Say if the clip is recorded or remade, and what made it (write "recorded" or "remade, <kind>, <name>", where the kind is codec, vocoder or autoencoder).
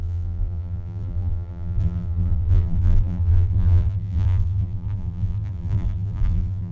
remade, vocoder, BigVGAN v2